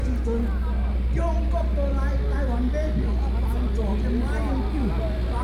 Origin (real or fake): real